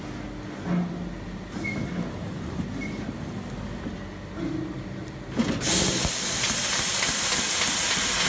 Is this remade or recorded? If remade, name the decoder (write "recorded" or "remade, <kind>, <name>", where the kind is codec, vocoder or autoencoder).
recorded